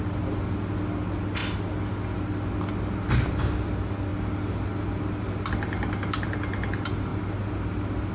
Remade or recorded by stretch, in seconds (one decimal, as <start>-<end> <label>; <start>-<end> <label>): 0.0-8.1 recorded